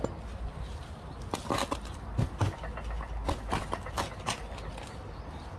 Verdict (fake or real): real